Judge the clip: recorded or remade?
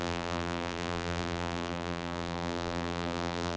remade